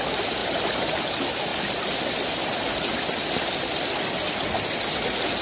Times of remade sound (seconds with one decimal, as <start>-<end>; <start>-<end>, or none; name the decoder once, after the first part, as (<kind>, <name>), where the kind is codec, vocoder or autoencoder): 0.4-1.0 (vocoder, BigVGAN v2); 1.5-4.7